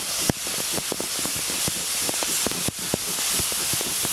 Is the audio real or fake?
real